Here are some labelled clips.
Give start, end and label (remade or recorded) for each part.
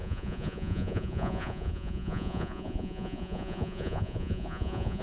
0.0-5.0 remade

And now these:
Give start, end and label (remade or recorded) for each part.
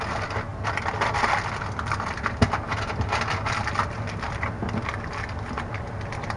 0.0-6.4 recorded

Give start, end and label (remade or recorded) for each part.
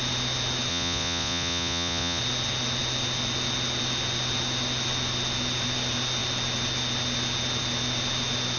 0.0-0.7 recorded; 0.7-2.2 remade; 2.2-8.6 recorded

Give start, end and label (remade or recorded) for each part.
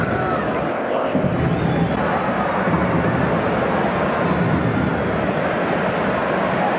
0.0-0.7 recorded; 0.7-1.3 remade; 1.3-6.8 recorded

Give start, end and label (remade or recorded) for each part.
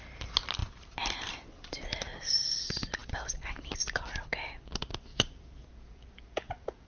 0.0-5.1 recorded; 5.1-6.9 remade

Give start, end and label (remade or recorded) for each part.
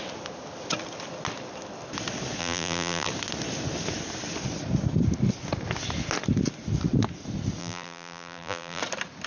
0.0-2.4 recorded; 2.4-3.1 remade; 3.1-7.6 recorded; 7.6-8.8 remade; 8.8-9.3 recorded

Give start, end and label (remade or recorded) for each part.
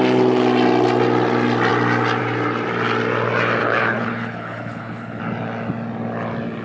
0.0-3.6 recorded; 3.6-5.2 remade; 5.2-6.6 recorded